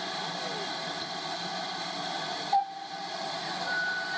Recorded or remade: recorded